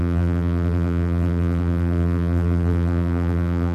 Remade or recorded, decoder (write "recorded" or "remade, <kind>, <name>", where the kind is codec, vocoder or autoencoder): remade, vocoder, BigVGAN v2